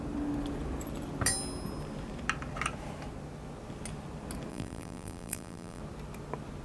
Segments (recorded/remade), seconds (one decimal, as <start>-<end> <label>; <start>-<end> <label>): 0.0-4.5 recorded; 4.5-5.8 remade; 5.8-6.6 recorded